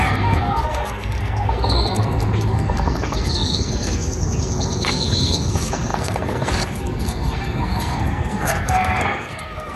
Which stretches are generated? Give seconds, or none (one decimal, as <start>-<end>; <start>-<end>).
0.0-9.8